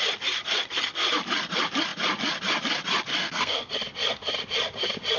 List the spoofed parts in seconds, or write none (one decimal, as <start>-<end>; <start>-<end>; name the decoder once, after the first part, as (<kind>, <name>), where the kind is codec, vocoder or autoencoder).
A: 3.2-3.7 (codec, SNAC)